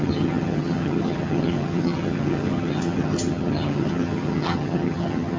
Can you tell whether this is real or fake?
fake